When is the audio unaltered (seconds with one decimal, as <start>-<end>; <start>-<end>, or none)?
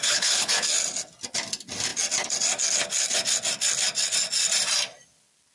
0.5-5.5